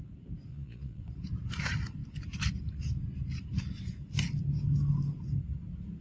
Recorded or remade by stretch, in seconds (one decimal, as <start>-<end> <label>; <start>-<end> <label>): 0.0-0.5 recorded; 0.5-1.0 remade; 1.0-6.0 recorded